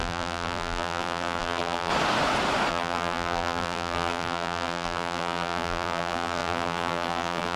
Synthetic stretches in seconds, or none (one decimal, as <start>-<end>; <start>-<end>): 0.0-1.9; 2.7-7.6